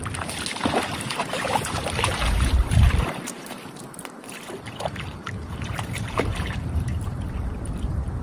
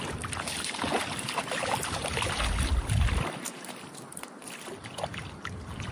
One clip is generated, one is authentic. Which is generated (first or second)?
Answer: first